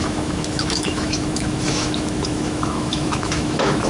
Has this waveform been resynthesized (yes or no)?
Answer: yes